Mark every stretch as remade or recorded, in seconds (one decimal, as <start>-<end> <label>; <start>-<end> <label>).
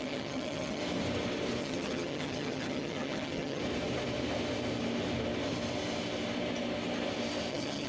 0.0-0.8 remade; 0.8-1.6 recorded; 1.6-3.6 remade; 3.6-7.5 recorded; 7.5-7.9 remade